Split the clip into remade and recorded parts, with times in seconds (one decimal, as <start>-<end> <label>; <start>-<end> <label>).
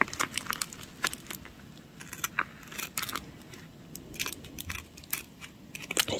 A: 0.0-6.2 recorded